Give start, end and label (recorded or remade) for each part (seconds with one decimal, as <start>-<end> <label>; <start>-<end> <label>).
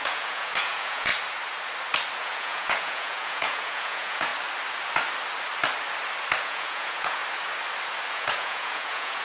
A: 0.0-1.1 remade; 1.1-2.2 recorded; 2.2-4.3 remade; 4.3-6.4 recorded; 6.4-7.2 remade; 7.2-8.1 recorded; 8.1-9.2 remade